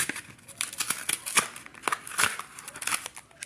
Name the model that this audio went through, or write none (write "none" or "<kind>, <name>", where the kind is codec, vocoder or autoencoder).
none